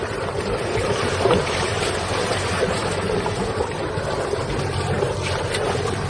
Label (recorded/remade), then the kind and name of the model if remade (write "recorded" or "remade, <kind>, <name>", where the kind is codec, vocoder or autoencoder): remade, vocoder, BigVGAN v2